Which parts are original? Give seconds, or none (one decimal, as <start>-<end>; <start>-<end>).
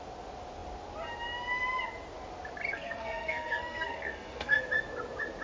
0.0-2.7; 4.6-5.4